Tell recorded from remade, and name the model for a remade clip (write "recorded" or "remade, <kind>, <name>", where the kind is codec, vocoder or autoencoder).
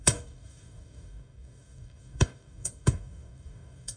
remade, codec, DAC